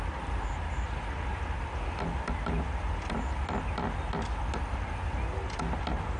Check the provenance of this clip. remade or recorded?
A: recorded